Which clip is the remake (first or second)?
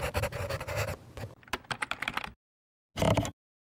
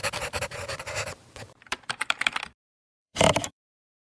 second